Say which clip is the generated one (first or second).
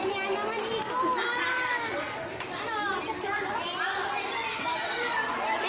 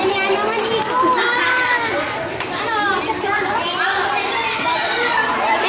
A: second